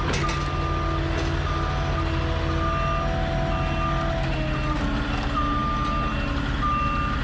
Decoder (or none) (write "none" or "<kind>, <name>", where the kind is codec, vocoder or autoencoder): none